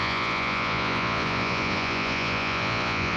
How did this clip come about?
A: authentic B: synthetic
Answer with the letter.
B